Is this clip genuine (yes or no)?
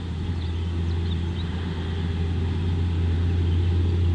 yes